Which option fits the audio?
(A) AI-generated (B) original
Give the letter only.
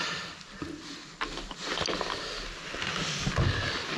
B